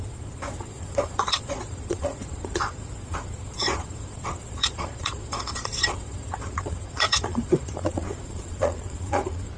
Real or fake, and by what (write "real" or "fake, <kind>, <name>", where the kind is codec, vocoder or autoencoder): fake, vocoder, Vocos